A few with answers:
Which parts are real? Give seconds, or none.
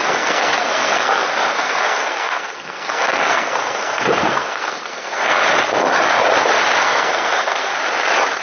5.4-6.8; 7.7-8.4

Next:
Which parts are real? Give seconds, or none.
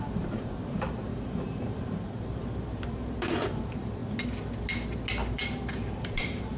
4.0-5.3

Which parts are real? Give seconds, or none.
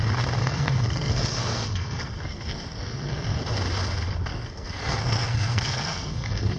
0.0-0.4; 3.4-4.3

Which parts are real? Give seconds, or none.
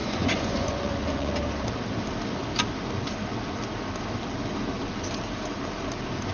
1.4-6.3